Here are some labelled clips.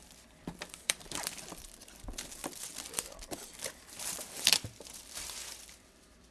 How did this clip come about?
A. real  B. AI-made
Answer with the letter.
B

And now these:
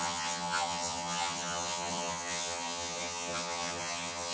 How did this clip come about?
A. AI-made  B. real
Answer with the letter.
A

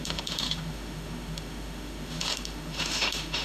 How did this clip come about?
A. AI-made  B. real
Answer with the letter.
A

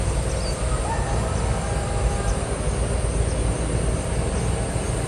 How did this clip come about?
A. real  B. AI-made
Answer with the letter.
A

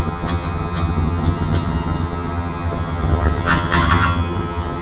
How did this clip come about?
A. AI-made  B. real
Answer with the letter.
A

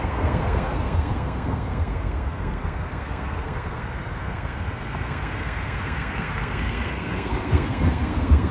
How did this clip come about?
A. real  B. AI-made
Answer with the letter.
B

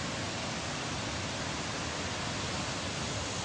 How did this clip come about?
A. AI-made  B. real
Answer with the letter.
B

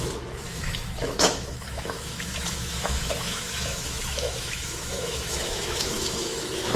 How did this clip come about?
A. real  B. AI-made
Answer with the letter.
B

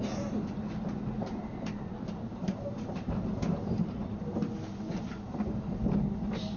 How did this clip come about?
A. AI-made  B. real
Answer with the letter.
B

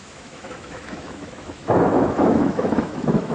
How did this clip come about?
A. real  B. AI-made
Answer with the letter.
B